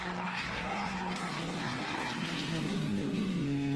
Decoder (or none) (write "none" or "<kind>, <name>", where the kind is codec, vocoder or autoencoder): codec, SNAC